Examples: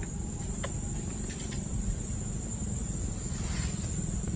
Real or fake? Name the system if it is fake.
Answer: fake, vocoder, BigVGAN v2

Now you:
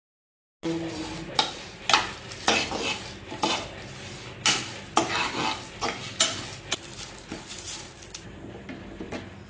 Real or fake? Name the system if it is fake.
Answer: real